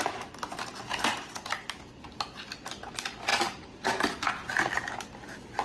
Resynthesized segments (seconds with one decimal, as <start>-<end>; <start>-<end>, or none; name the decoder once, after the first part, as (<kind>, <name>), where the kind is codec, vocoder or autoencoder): 3.3-4.3 (vocoder, BigVGAN v2)